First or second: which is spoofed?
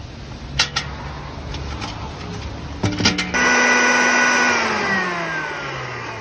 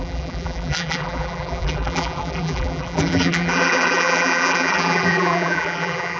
second